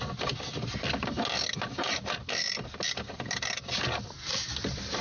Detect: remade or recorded recorded